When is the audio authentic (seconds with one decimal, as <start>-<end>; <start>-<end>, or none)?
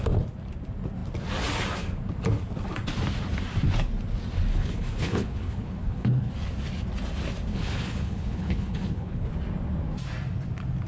0.0-4.5; 6.3-7.5; 9.3-10.9